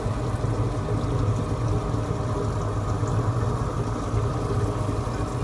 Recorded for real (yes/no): yes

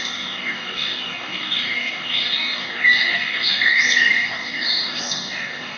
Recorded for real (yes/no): no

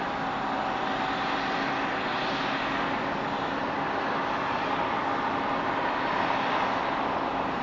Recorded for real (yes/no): yes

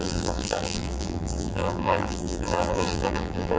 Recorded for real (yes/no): no